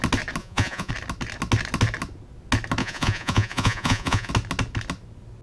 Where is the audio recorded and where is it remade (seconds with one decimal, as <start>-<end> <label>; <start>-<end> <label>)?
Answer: 0.0-0.4 recorded; 0.4-0.9 remade; 0.9-2.8 recorded; 2.8-4.3 remade; 4.3-5.4 recorded

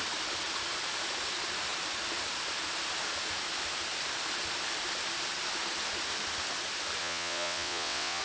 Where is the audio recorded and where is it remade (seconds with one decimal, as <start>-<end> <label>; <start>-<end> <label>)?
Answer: 0.0-7.0 recorded; 7.0-8.2 remade

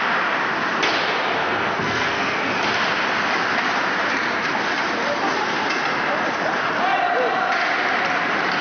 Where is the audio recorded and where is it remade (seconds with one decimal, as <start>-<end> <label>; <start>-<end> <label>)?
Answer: 0.0-1.4 recorded; 1.4-2.5 remade; 2.5-8.6 recorded